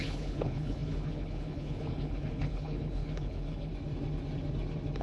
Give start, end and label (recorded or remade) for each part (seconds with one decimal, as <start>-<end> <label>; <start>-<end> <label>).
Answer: 0.0-3.7 remade; 3.7-5.0 recorded